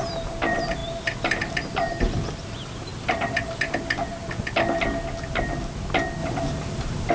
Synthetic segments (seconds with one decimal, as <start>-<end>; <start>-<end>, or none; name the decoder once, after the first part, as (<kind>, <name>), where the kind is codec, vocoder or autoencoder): 6.2-7.1 (vocoder, BigVGAN v2)